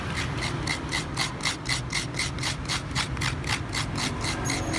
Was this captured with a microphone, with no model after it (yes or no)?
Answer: yes